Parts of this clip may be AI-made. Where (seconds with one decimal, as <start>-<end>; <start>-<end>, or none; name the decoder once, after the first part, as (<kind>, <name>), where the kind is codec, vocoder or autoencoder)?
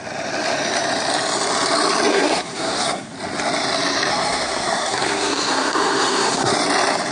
2.1-3.1 (codec, SNAC); 4.1-6.5